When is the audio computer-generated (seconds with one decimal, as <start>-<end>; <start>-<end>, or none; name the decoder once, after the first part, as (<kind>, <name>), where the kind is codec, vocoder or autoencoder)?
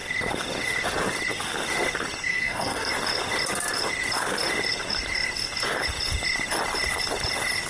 2.3-2.9 (codec, SNAC)